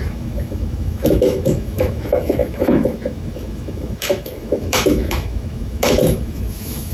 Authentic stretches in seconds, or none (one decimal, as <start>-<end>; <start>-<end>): none